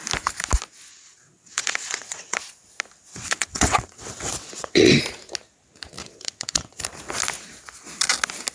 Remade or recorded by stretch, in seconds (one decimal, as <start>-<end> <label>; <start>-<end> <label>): 0.0-0.9 recorded; 0.9-2.4 remade; 2.4-3.1 recorded; 3.1-5.0 remade; 5.0-6.0 recorded; 6.0-6.8 remade; 6.8-8.5 recorded